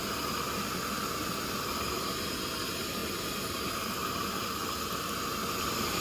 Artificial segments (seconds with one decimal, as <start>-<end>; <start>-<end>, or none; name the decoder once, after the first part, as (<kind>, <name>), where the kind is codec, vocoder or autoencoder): none

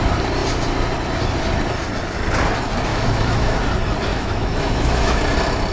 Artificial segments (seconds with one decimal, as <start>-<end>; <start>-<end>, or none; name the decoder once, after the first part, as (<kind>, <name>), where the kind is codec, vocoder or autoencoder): 2.9-3.6 (autoencoder, DAC-VAE); 4.1-5.2

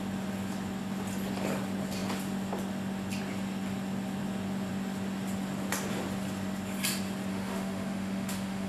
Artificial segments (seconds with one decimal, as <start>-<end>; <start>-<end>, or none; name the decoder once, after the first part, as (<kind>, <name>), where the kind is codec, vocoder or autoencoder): 7.3-8.7 (autoencoder, DAC-VAE)

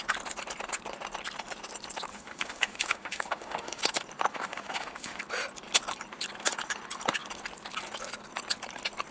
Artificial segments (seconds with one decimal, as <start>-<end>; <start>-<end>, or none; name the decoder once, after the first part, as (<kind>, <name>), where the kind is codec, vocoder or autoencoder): 2.1-3.8 (autoencoder, DAC-VAE); 4.3-5.2

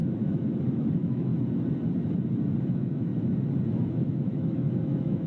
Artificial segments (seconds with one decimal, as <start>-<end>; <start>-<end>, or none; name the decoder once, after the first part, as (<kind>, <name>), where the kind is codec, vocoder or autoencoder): 0.0-1.3 (autoencoder, DAC-VAE); 2.6-3.1; 3.7-5.3

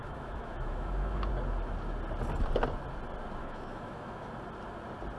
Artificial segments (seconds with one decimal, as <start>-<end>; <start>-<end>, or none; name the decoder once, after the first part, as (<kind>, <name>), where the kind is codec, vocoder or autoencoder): 0.0-1.3 (autoencoder, DAC-VAE); 3.4-4.3

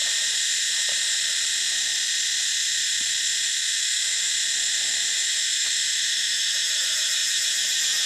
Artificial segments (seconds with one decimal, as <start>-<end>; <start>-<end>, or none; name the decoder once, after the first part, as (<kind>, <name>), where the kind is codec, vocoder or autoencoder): 3.5-4.3 (autoencoder, DAC-VAE); 5.1-5.7

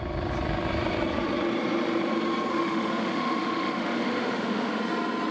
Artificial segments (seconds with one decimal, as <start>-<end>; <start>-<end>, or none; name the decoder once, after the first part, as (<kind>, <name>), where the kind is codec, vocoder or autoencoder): 2.5-4.8 (autoencoder, DAC-VAE)